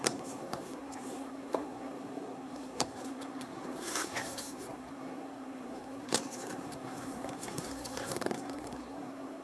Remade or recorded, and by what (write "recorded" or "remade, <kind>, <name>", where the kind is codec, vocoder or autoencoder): remade, codec, SNAC